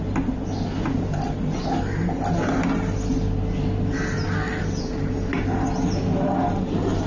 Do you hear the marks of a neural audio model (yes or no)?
no